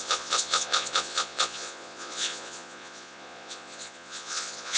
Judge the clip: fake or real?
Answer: fake